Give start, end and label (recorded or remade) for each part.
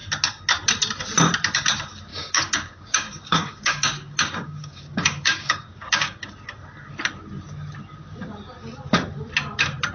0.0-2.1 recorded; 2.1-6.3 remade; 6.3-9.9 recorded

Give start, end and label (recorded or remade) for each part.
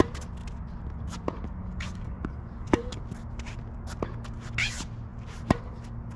0.0-1.6 recorded; 1.6-3.0 remade; 3.0-6.2 recorded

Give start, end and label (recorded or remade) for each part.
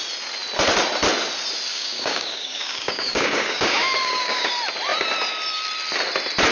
0.0-1.7 recorded; 1.7-4.5 remade; 4.5-6.5 recorded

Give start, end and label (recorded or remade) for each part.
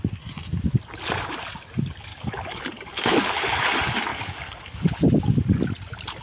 0.0-2.1 recorded; 2.1-3.3 remade; 3.3-4.1 recorded; 4.1-4.9 remade; 4.9-6.2 recorded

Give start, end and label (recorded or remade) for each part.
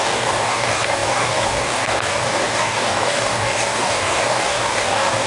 0.0-5.3 remade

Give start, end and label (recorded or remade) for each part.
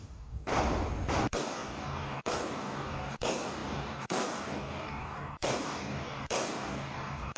0.0-0.5 remade; 0.5-1.2 recorded; 1.2-7.4 remade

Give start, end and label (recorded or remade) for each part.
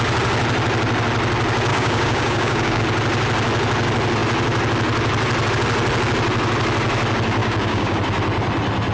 0.0-1.7 recorded; 1.7-2.8 remade; 2.8-7.4 recorded; 7.4-8.0 remade; 8.0-8.9 recorded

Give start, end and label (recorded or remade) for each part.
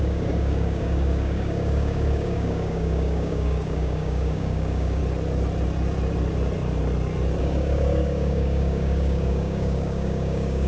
0.0-5.0 remade; 5.0-7.4 recorded; 7.4-10.7 remade